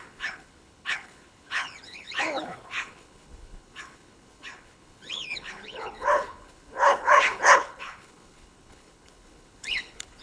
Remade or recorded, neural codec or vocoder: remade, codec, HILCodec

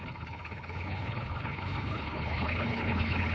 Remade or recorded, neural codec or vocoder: remade, codec, HILCodec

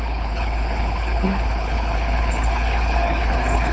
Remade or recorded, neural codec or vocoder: remade, codec, HILCodec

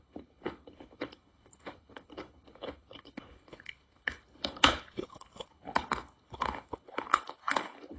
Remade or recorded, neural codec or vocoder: remade, codec, HILCodec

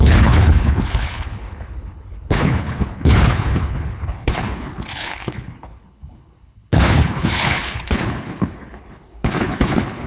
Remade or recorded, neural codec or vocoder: remade, codec, HILCodec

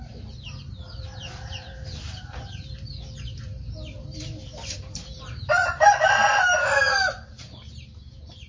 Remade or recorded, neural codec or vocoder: recorded